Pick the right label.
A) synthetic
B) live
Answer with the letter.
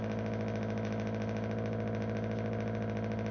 B